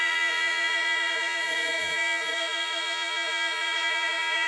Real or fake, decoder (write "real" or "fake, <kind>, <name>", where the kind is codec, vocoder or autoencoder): fake, vocoder, Vocos